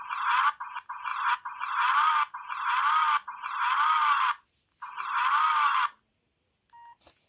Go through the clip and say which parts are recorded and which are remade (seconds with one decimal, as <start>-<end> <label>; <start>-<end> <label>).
0.0-7.3 recorded